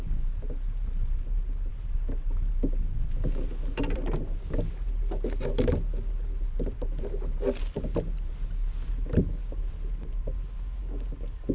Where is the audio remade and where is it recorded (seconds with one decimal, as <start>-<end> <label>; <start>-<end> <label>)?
0.0-11.5 recorded